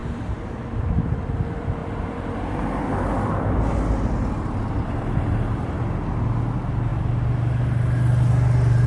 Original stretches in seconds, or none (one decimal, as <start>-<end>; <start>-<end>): 0.0-8.9